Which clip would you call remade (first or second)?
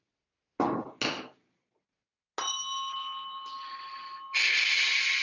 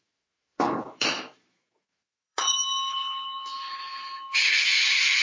second